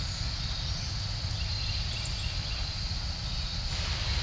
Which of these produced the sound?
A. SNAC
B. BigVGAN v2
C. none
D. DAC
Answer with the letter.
C